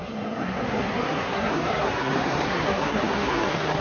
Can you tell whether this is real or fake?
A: fake